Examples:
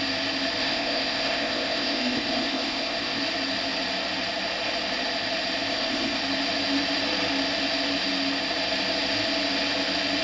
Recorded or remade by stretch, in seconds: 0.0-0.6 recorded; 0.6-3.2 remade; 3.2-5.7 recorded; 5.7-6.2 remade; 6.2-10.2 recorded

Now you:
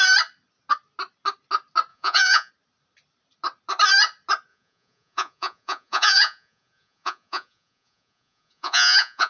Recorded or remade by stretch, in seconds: 0.0-1.9 recorded; 1.9-2.5 remade; 2.5-4.5 recorded; 4.5-9.3 remade

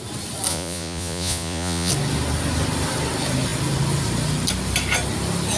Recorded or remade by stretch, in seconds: 0.0-0.5 recorded; 0.5-1.9 remade; 1.9-5.6 recorded

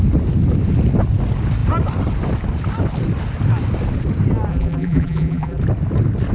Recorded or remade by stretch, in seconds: 0.0-4.5 recorded; 4.5-5.6 remade; 5.6-6.3 recorded

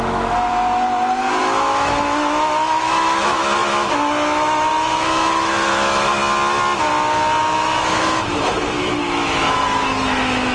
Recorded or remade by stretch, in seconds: 0.0-0.5 remade; 0.5-1.4 recorded; 1.4-6.2 remade; 6.2-7.4 recorded; 7.4-10.5 remade

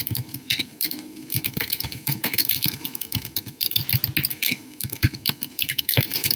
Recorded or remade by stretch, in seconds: 0.0-3.8 remade; 3.8-4.3 recorded; 4.3-6.4 remade

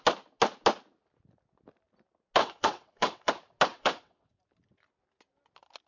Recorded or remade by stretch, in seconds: 0.0-2.4 recorded; 2.4-3.3 remade; 3.3-3.7 recorded; 3.7-4.4 remade; 4.4-5.9 recorded